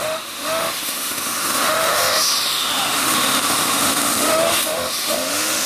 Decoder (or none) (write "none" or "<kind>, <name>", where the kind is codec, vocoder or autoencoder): autoencoder, DAC-VAE